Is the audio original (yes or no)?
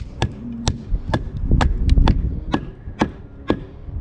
yes